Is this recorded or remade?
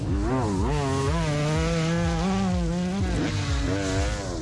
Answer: recorded